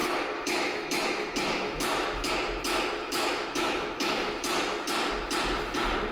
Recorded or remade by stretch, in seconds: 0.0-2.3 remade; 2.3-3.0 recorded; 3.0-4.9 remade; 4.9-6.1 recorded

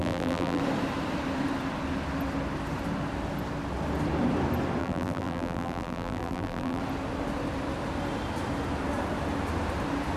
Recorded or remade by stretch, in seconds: 0.0-0.6 remade; 0.6-4.8 recorded; 4.8-6.8 remade; 6.8-10.2 recorded

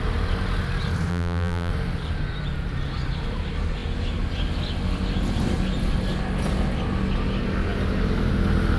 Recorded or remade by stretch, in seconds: 0.0-1.1 recorded; 1.1-1.7 remade; 1.7-8.8 recorded